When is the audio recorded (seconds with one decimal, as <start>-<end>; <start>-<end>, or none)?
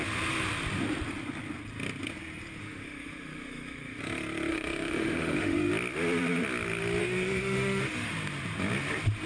0.0-2.6; 4.0-4.5; 5.7-7.0; 8.1-9.3